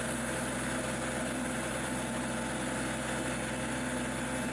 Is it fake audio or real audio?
real